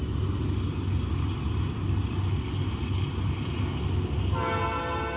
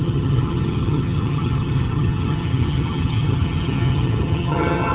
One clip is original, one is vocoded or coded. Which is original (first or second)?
first